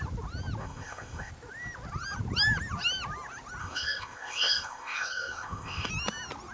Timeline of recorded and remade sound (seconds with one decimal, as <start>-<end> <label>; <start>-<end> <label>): 0.0-0.6 recorded; 0.6-1.3 remade; 1.3-3.6 recorded; 3.6-5.9 remade; 5.9-6.5 recorded